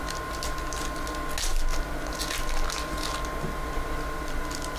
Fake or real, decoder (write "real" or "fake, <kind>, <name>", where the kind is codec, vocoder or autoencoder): real